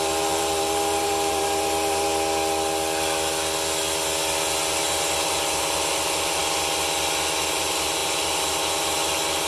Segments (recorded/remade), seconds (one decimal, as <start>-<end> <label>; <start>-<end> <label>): 0.0-2.1 remade; 2.1-4.8 recorded; 4.8-6.4 remade; 6.4-7.5 recorded; 7.5-9.5 remade